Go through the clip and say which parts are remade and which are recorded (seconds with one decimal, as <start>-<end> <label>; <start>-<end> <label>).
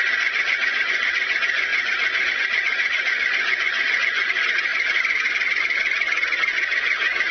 0.0-7.3 remade